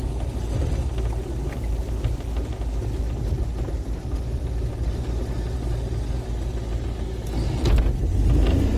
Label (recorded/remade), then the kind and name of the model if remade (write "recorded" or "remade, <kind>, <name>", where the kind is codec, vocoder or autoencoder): recorded